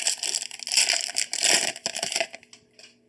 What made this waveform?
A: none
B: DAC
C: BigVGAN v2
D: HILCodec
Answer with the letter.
A